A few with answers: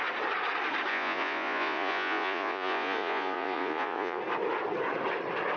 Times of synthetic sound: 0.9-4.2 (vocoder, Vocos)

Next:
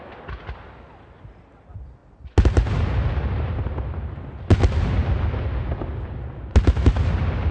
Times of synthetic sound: none

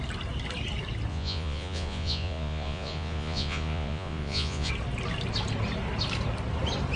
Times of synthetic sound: 1.1-4.7 (vocoder, Vocos)